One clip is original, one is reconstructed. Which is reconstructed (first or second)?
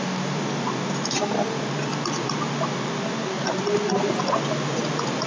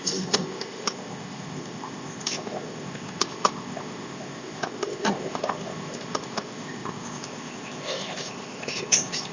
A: second